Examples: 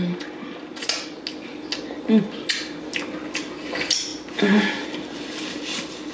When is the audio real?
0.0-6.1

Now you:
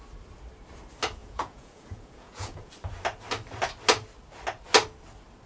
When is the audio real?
0.0-1.2; 2.7-5.5

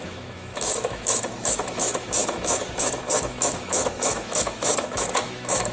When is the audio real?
none

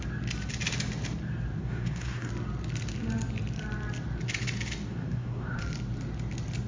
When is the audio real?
0.0-1.6; 2.3-4.9; 5.6-6.7